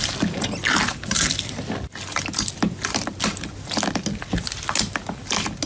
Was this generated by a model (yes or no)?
no